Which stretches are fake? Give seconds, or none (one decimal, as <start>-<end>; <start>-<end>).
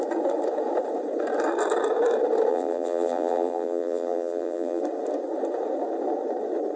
2.5-4.8